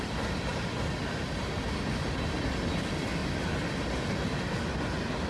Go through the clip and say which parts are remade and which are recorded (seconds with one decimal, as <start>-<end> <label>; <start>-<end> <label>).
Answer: 0.0-5.3 recorded